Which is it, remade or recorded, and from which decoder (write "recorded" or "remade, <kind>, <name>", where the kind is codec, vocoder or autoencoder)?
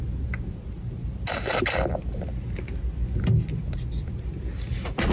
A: recorded